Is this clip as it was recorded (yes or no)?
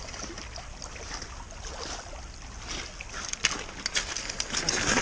yes